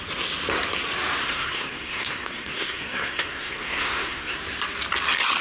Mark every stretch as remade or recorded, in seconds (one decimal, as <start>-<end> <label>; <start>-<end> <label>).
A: 0.0-1.2 recorded; 1.2-4.4 remade; 4.4-5.4 recorded